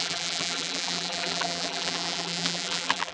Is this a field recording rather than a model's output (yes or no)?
no